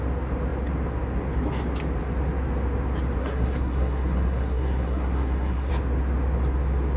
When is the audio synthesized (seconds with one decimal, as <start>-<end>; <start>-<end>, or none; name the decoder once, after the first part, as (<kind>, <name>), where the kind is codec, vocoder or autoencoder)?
3.2-5.7 (codec, SNAC)